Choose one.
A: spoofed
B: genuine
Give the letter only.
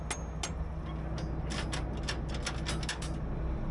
B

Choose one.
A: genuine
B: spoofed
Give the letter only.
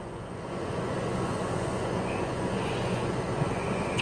B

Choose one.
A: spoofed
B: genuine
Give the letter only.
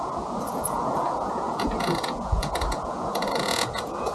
A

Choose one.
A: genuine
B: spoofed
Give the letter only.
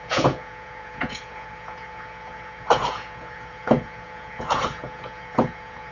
B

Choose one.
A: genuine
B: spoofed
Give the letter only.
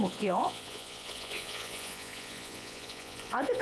B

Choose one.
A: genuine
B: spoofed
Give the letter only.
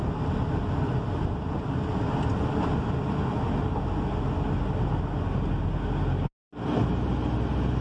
A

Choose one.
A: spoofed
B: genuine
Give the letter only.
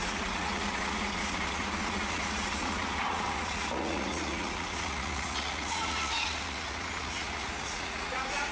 A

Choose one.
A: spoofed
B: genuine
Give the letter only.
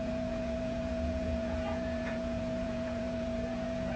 A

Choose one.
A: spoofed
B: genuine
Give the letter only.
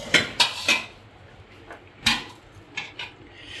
B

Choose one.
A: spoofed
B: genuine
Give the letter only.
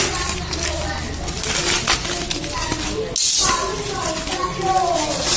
B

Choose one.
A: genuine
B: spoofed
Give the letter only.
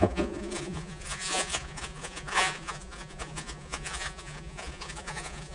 B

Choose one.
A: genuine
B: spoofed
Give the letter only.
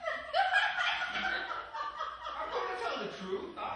A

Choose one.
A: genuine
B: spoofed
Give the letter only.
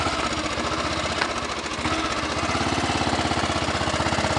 A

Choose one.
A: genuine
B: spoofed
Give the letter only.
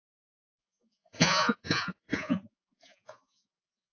B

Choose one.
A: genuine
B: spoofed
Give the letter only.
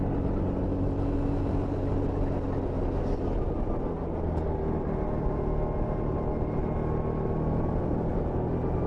A